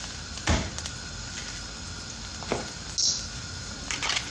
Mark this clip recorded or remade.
recorded